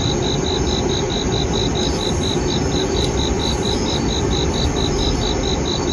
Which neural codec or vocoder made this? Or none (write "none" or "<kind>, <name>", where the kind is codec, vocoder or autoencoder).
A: none